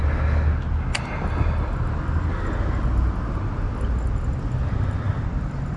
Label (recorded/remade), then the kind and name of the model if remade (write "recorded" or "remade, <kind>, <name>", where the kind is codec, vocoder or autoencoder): recorded